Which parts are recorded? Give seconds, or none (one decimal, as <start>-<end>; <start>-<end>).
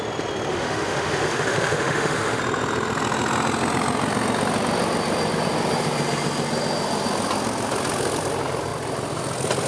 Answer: 0.0-0.5; 2.4-9.7